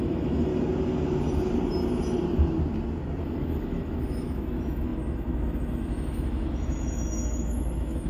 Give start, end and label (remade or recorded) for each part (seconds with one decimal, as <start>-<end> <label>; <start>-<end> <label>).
0.0-0.5 remade; 0.5-3.2 recorded; 3.2-8.1 remade